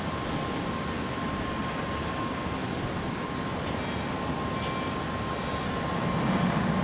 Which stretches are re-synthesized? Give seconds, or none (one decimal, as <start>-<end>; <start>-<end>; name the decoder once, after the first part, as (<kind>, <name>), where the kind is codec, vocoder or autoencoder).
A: none